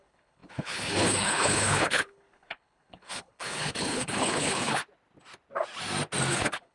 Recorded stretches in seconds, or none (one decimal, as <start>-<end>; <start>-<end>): 4.8-6.3